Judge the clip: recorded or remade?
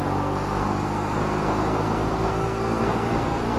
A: remade